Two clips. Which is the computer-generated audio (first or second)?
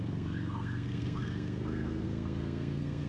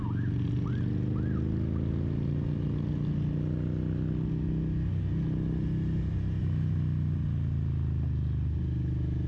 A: first